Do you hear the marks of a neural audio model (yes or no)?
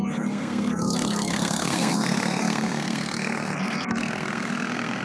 yes